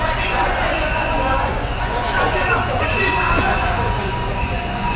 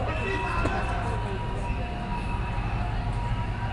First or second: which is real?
second